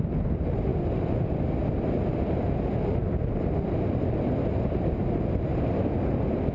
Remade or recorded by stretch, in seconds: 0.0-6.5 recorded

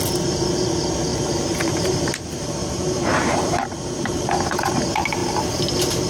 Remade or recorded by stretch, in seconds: 0.0-1.1 recorded; 1.1-4.8 remade; 4.8-6.1 recorded

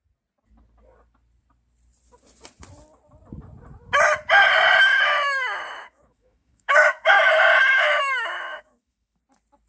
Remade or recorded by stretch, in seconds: 0.0-4.8 recorded; 4.8-7.3 remade; 7.3-7.7 recorded; 7.7-9.2 remade; 9.2-9.7 recorded